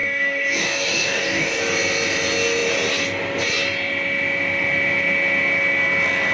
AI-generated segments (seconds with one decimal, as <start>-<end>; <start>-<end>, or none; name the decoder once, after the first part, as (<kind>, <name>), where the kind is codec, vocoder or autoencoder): 0.0-1.6 (codec, DAC)